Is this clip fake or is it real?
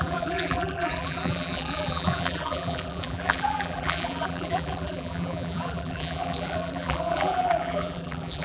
fake